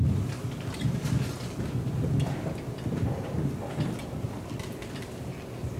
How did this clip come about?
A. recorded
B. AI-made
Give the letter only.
A